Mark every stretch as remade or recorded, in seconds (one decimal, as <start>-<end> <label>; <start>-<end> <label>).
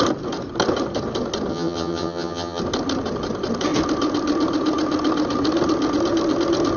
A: 0.0-1.5 recorded; 1.5-2.6 remade; 2.6-6.8 recorded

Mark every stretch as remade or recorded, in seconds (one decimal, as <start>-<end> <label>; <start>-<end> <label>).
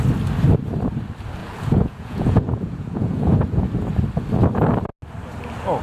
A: 0.0-1.4 recorded; 1.4-3.6 remade; 3.6-5.8 recorded